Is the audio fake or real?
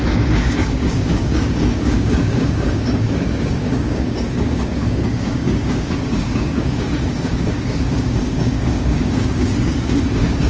fake